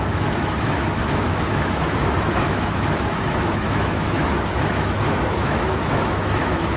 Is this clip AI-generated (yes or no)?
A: yes